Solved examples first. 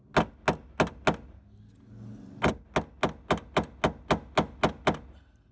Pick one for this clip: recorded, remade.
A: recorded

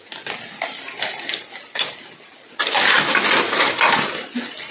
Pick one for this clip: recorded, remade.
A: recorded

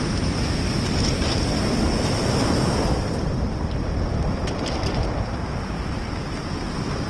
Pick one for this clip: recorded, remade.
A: recorded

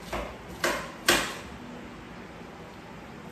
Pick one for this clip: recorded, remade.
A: recorded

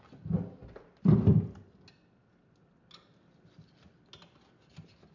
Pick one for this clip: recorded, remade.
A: recorded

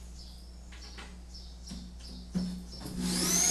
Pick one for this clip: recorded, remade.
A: recorded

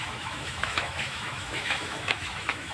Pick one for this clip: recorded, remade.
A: remade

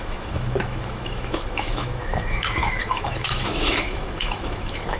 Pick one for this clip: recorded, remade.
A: remade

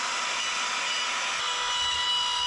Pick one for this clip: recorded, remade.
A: recorded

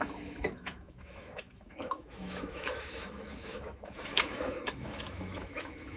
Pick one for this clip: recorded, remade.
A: remade